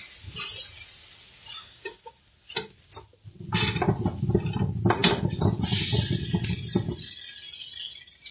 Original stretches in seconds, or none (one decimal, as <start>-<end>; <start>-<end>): 0.0-1.6; 2.2-8.3